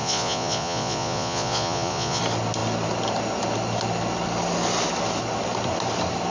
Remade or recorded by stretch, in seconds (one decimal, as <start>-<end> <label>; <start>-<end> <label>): 0.0-2.2 remade; 2.2-6.3 recorded

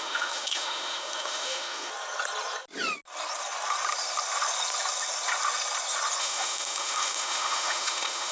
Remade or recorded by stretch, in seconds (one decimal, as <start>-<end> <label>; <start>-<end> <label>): 0.0-1.9 remade; 1.9-6.2 recorded; 6.2-8.3 remade